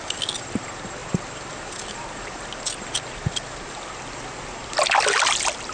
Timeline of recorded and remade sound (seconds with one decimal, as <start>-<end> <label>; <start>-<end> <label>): 0.0-5.7 recorded